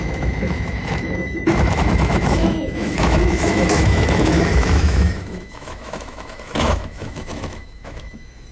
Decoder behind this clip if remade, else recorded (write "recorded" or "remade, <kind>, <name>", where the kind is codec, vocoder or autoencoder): remade, autoencoder, DAC-VAE